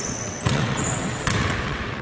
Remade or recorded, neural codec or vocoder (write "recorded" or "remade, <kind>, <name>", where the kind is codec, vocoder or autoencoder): remade, vocoder, WaveNeXt